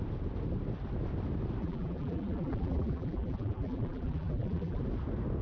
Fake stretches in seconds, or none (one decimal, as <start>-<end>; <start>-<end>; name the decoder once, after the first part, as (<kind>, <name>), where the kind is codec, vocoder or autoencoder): 1.6-4.8 (vocoder, BigVGAN v2)